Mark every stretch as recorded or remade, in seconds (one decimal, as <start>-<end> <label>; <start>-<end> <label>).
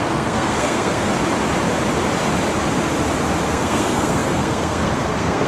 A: 0.0-1.1 remade; 1.1-3.5 recorded; 3.5-5.5 remade